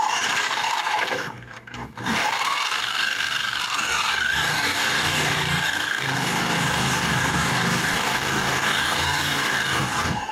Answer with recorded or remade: remade